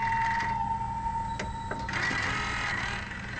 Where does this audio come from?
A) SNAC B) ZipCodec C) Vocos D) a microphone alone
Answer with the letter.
D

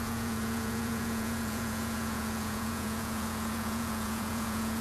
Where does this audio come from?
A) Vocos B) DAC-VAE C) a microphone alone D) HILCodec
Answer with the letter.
A